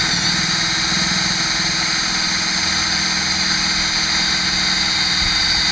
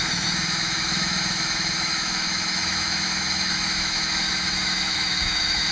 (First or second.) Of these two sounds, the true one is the first